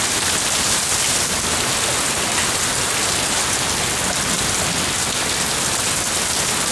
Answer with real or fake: real